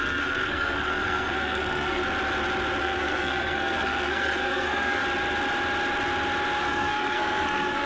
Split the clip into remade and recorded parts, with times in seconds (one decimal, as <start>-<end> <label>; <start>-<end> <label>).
0.0-2.0 remade; 2.0-2.8 recorded; 2.8-5.0 remade; 5.0-6.6 recorded; 6.6-7.9 remade